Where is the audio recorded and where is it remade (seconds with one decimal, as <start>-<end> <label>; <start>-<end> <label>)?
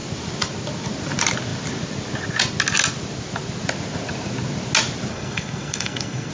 0.0-5.1 recorded; 5.1-6.3 remade